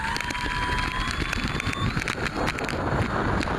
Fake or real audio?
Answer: real